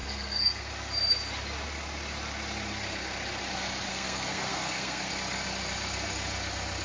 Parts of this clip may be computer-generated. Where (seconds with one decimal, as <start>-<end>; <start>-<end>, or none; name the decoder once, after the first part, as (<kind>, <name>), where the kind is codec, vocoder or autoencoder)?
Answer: 0.0-0.7 (codec, SNAC); 3.9-5.1

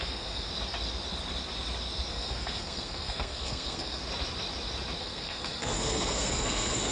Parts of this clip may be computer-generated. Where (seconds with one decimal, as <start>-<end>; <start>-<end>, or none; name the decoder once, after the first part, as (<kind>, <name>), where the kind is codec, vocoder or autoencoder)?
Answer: 0.0-0.5 (codec, SNAC); 2.1-4.0; 5.0-6.9

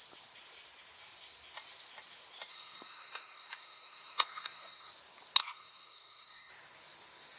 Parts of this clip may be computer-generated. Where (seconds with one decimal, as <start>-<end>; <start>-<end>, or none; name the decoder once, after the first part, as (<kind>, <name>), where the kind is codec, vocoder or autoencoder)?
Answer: 2.5-4.9 (codec, SNAC); 5.4-6.5

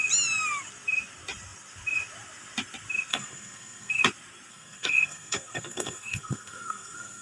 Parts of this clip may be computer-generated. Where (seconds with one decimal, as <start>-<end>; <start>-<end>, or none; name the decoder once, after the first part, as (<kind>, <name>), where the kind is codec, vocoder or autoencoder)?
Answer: 3.1-4.0 (codec, SNAC); 4.5-7.2